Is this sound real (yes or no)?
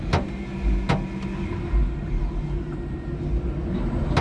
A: yes